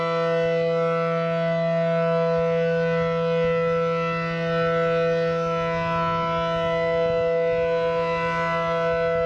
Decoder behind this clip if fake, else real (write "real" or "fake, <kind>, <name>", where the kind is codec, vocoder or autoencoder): real